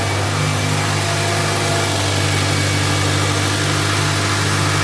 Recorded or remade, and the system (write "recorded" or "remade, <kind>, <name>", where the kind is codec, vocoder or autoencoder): recorded